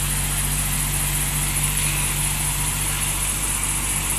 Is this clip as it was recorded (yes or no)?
yes